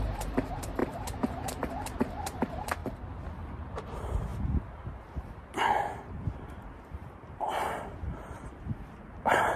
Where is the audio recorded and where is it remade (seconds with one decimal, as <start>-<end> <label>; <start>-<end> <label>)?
0.0-2.8 remade; 2.8-3.8 recorded; 3.8-9.6 remade